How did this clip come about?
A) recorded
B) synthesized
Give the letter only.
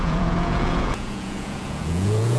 B